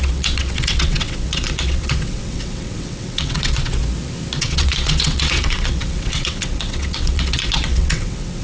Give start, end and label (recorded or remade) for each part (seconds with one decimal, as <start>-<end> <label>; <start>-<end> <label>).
0.0-3.8 remade; 3.8-4.4 recorded; 4.4-8.4 remade